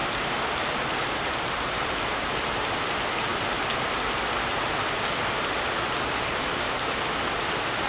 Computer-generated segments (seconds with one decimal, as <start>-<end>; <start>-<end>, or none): none

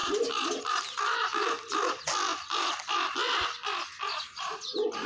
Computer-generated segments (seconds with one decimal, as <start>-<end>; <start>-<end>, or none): none